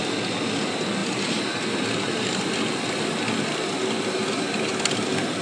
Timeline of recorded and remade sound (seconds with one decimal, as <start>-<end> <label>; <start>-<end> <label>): 0.0-5.4 recorded